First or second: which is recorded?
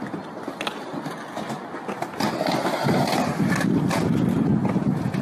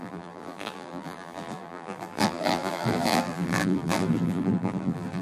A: first